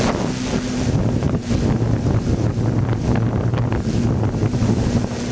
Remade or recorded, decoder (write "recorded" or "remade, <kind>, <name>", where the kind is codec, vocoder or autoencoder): recorded